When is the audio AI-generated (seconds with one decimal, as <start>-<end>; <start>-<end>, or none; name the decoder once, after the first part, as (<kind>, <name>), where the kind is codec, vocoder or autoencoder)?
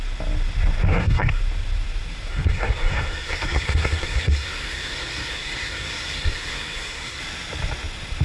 0.9-1.4 (codec, SNAC); 2.3-7.2